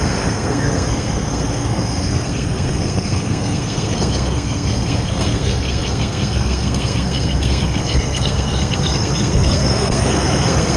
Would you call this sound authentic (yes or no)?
no